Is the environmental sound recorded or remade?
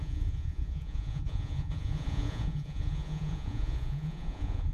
remade